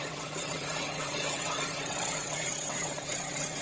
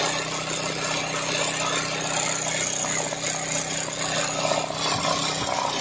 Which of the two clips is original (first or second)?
second